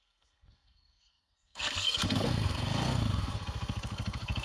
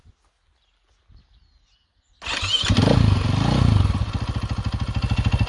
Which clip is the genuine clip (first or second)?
second